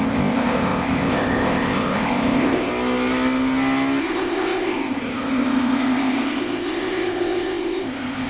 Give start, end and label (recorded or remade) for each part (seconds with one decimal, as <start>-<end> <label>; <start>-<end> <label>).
0.0-2.7 remade; 2.7-4.0 recorded; 4.0-8.3 remade